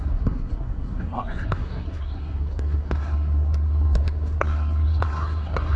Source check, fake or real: fake